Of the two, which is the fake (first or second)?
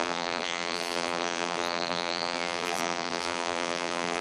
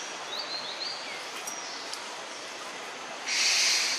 first